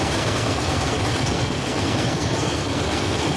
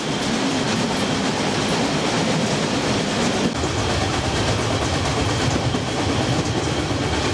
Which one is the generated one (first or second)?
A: first